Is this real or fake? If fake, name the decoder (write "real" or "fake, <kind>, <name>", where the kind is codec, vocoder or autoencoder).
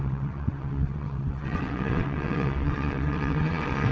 fake, vocoder, WaveNeXt